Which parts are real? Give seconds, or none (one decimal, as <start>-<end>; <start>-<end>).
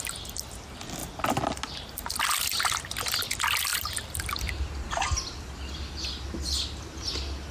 0.0-3.7; 4.2-7.5